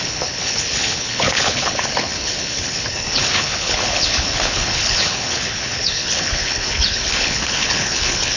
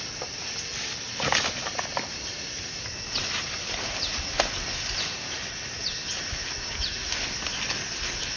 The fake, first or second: first